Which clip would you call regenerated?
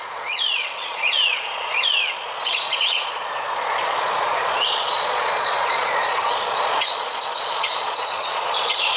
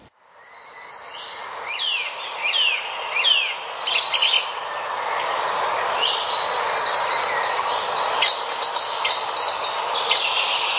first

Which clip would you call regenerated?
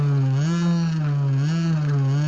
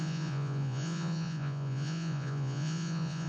second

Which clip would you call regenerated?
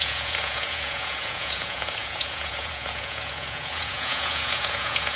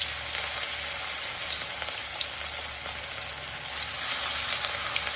first